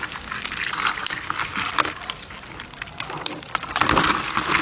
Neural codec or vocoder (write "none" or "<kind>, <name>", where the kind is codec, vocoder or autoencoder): none